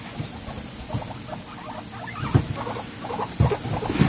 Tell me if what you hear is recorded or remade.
recorded